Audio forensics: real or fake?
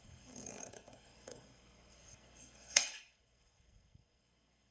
fake